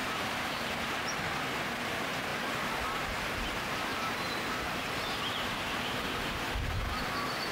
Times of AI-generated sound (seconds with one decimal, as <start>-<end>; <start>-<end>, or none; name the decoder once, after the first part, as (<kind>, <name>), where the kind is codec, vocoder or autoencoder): 0.0-0.9 (vocoder, BigVGAN v2); 3.9-6.3